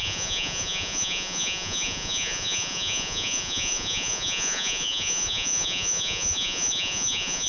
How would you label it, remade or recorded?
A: remade